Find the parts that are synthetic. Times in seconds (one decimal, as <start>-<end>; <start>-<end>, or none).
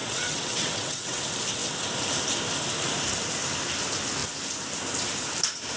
0.0-1.2